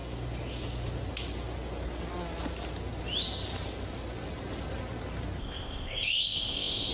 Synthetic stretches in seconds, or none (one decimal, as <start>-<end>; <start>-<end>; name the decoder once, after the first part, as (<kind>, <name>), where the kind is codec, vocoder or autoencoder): 5.4-6.9 (codec, ZipCodec)